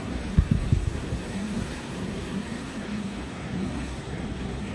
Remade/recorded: remade